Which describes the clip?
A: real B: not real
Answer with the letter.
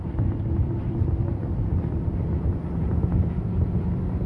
B